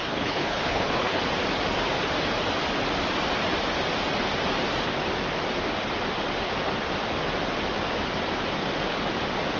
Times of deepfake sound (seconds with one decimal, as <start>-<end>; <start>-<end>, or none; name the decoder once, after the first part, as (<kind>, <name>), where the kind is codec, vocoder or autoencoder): 0.0-1.2 (codec, HILCodec)